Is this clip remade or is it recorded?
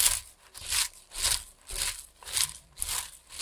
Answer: recorded